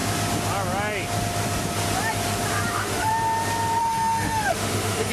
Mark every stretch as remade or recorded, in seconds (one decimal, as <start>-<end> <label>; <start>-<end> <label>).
0.0-2.7 recorded; 2.7-3.1 remade; 3.1-3.8 recorded; 3.8-5.1 remade